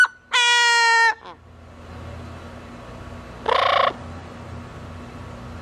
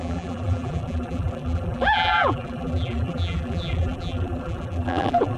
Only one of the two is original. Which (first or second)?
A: first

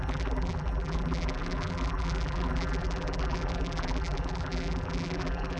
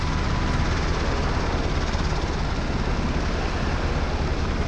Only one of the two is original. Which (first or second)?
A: second